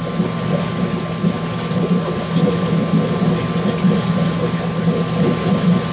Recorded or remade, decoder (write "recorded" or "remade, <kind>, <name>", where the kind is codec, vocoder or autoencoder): recorded